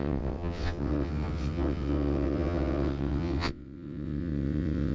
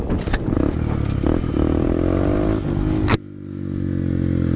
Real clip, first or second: second